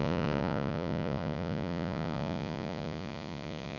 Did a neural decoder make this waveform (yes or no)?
yes